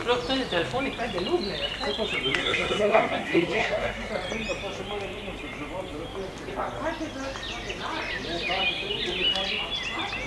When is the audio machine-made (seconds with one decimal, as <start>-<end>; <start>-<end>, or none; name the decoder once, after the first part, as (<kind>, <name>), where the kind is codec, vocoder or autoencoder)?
2.4-4.1 (codec, SNAC)